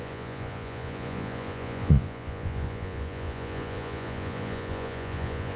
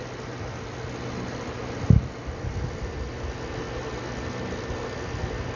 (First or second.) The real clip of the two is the second